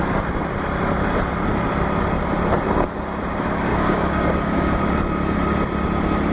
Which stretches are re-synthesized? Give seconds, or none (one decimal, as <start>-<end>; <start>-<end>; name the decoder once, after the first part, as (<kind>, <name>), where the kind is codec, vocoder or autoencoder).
3.7-4.8 (codec, DAC)